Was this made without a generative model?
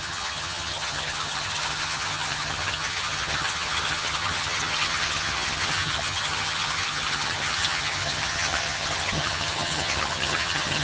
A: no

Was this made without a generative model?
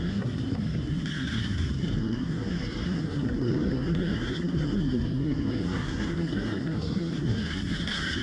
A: no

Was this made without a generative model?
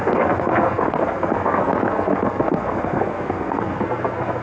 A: no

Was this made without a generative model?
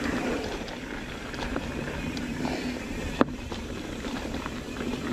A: no